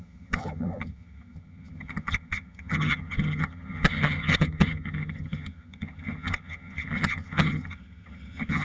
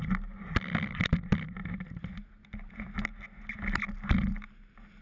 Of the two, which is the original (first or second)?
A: second